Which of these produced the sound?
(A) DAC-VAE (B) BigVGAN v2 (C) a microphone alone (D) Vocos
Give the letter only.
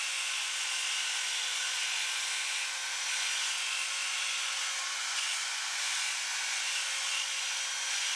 D